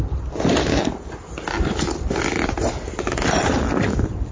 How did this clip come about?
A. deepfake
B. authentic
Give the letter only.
B